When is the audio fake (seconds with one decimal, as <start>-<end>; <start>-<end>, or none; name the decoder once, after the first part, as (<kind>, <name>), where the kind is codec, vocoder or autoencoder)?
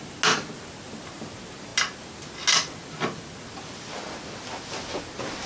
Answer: none